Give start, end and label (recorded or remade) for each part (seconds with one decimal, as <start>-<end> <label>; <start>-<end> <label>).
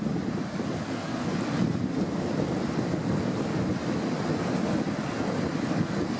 0.0-6.2 recorded